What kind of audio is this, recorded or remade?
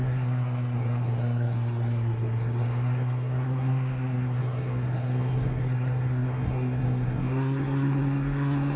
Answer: remade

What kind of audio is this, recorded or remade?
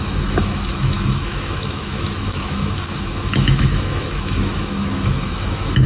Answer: remade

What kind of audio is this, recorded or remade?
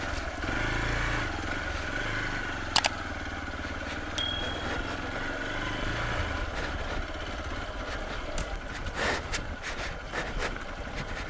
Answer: recorded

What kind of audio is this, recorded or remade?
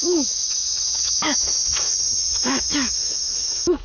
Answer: remade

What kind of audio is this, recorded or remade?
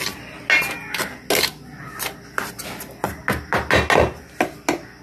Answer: recorded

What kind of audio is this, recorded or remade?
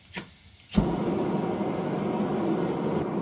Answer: recorded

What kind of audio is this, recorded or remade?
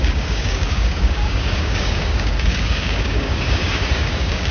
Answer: remade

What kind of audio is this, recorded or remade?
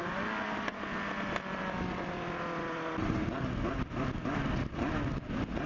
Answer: recorded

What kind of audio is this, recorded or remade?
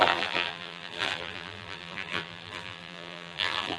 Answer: remade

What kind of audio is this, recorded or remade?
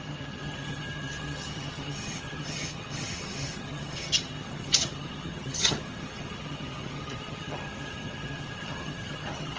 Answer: remade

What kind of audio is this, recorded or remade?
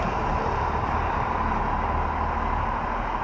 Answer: recorded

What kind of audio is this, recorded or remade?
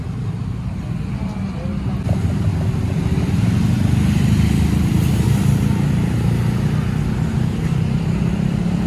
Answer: recorded